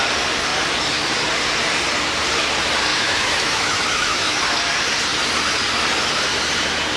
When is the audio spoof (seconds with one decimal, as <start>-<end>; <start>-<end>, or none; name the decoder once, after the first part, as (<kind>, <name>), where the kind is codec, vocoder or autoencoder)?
2.9-4.4 (autoencoder, DAC-VAE)